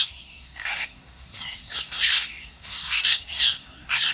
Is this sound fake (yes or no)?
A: yes